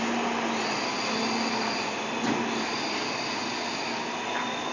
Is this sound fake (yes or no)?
no